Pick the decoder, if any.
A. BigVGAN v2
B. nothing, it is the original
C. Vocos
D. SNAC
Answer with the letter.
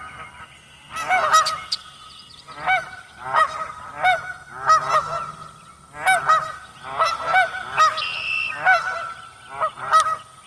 B